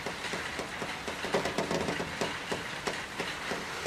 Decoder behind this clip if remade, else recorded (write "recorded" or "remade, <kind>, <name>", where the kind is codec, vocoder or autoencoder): recorded